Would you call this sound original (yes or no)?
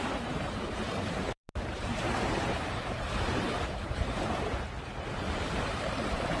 no